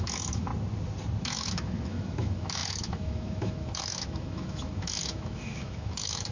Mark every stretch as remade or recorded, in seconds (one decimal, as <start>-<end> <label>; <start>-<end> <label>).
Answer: 0.0-0.5 remade; 0.5-1.2 recorded; 1.2-6.3 remade